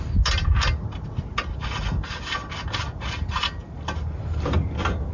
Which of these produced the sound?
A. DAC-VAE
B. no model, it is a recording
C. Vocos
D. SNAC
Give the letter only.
B